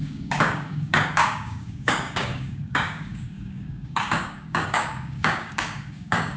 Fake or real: fake